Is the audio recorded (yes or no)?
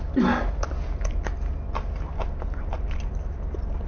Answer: yes